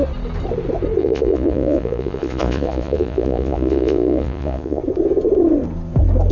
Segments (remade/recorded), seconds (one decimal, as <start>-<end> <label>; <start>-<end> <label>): 0.0-1.0 recorded; 1.0-4.8 remade; 4.8-6.3 recorded